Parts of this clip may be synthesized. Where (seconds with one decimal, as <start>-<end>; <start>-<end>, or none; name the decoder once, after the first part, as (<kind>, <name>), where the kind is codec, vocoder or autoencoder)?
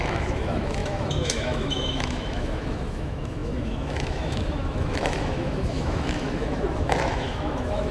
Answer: 0.0-7.9 (autoencoder, DAC-VAE)